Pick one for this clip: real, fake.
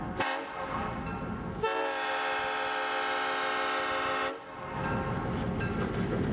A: real